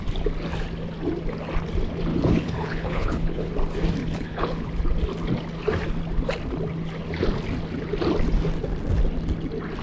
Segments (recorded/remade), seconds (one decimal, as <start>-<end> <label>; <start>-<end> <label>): 0.0-2.1 recorded; 2.1-3.5 remade; 3.5-4.0 recorded; 4.0-4.7 remade; 4.7-9.8 recorded